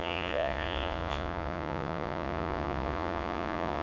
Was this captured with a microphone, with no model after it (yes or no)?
no